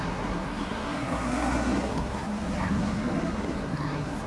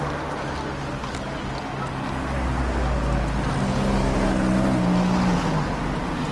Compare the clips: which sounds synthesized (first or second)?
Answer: first